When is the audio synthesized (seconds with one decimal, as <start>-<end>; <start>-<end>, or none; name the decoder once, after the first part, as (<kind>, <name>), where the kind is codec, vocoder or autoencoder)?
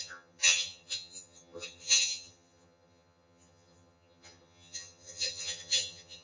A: 0.0-6.2 (vocoder, HiFi-GAN)